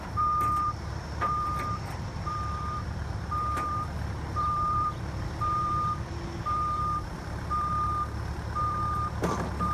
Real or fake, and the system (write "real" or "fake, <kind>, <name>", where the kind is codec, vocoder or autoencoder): fake, vocoder, BigVGAN v2